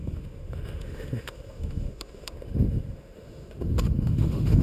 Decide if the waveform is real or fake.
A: fake